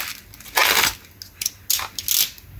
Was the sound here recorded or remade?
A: recorded